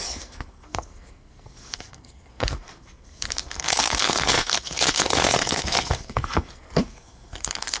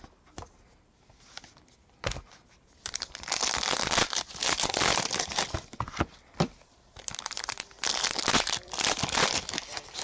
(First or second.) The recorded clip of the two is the second